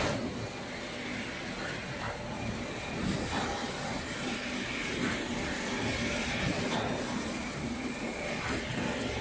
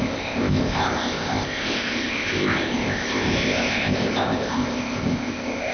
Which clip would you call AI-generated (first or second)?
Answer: second